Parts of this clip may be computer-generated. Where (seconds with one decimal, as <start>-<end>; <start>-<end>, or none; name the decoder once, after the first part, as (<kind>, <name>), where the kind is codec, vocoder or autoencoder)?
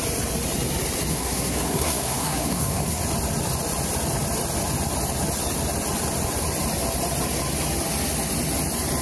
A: 1.1-3.0 (codec, SNAC)